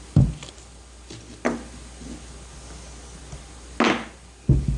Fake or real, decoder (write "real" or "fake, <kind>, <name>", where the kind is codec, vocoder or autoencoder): real